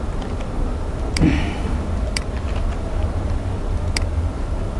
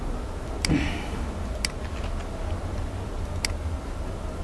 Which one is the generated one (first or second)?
first